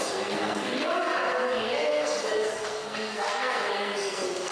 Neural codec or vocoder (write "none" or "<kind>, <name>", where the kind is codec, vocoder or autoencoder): codec, SNAC